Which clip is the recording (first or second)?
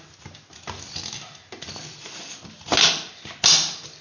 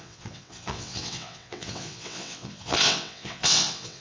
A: first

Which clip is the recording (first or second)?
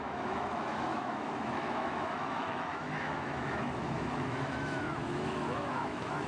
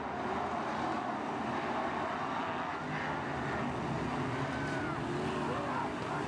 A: second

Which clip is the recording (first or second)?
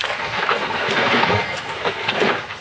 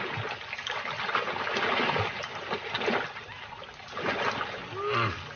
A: second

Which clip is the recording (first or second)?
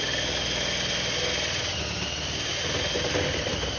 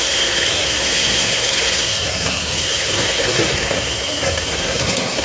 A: first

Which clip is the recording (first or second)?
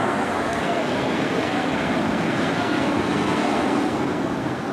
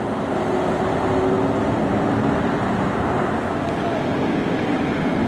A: second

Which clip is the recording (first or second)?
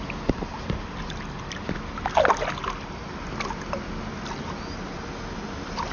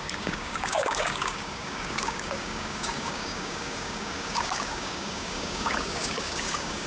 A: first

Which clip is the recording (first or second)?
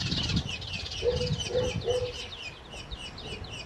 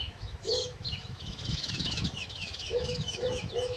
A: first